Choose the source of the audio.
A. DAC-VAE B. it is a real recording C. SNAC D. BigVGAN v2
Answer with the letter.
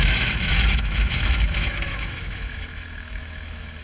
A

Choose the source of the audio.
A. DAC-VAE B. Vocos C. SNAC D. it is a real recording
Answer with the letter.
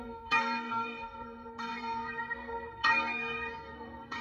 C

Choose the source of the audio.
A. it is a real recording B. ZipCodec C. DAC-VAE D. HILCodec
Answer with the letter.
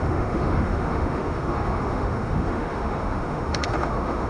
C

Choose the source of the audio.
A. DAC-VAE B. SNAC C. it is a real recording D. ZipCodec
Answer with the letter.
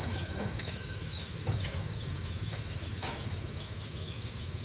A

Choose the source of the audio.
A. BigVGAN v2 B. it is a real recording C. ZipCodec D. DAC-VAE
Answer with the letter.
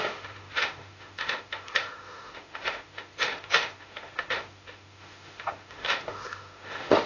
D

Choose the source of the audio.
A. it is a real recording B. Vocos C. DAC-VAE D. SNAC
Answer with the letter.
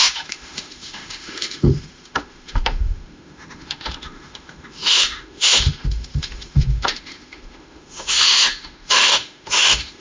C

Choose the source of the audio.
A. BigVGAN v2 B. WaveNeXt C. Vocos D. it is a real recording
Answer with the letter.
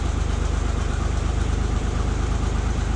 A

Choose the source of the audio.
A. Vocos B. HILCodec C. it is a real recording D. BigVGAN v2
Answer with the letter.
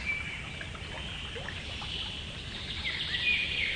C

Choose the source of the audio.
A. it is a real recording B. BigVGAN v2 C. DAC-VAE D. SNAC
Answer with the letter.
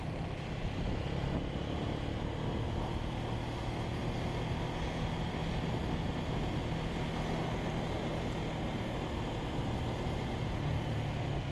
A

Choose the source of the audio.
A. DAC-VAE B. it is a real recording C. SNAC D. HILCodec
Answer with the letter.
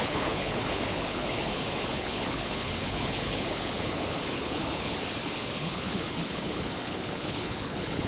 D